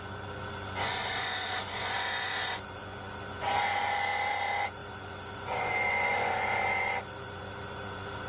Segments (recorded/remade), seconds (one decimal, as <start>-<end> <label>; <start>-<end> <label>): 0.0-8.3 remade